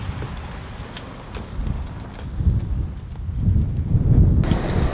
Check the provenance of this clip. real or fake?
real